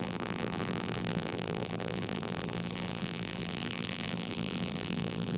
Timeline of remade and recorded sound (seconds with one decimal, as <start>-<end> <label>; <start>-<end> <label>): 0.0-5.4 remade